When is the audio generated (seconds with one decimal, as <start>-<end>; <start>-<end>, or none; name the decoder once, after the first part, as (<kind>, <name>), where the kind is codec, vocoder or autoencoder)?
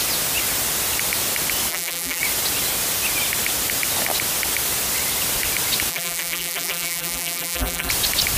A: 1.7-2.2 (vocoder, BigVGAN v2); 5.9-7.9